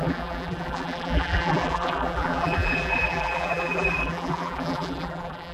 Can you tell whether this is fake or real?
fake